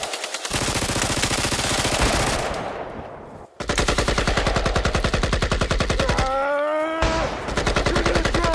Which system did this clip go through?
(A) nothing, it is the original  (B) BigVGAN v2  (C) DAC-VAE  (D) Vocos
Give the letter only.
A